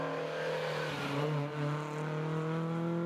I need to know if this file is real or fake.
real